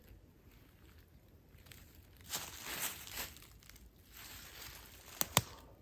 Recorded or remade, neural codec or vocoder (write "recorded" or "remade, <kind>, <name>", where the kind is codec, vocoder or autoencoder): recorded